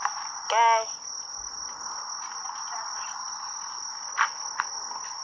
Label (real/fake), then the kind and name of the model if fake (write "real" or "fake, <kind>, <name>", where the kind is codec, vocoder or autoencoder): real